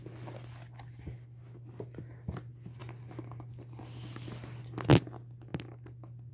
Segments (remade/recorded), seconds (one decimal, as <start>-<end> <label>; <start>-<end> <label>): 0.0-6.3 recorded